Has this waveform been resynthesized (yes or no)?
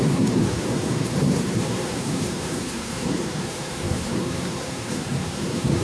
yes